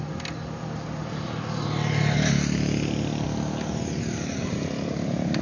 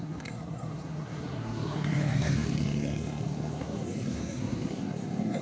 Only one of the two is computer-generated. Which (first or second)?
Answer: second